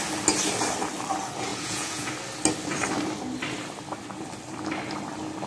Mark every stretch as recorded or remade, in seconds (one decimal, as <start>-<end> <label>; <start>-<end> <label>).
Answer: 0.0-1.5 recorded; 1.5-2.1 remade; 2.1-5.5 recorded